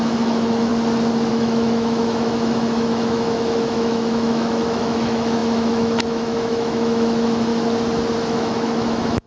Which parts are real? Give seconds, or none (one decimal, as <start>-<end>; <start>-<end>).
0.7-1.3; 7.5-8.3